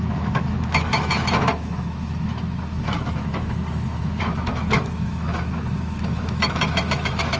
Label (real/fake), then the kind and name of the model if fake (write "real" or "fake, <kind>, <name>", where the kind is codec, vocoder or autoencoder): fake, autoencoder, DAC-VAE